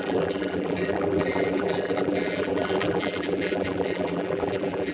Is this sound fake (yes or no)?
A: yes